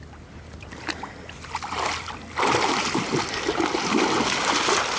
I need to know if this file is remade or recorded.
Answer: recorded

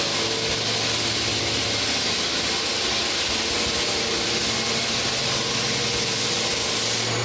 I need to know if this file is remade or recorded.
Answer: recorded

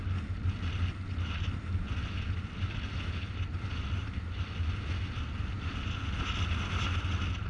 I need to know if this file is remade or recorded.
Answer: recorded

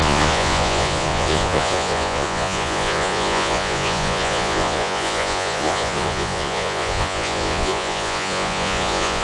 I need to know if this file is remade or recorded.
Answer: remade